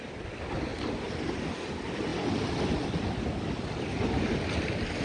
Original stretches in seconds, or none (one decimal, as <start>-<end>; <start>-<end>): 0.0-0.7; 1.7-2.1; 2.7-5.0